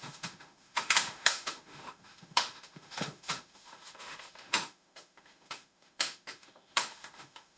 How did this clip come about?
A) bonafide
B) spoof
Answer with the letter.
B